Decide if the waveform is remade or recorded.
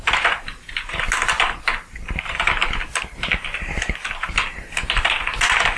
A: recorded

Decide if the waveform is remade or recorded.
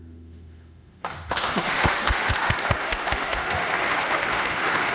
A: remade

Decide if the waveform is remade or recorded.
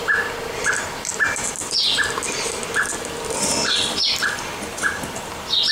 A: recorded